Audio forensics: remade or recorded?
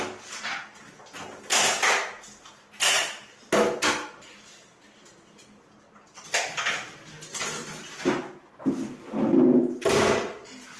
recorded